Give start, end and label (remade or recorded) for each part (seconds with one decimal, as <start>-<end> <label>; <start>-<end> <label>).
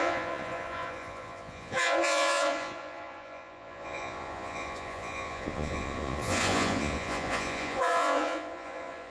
0.0-9.1 remade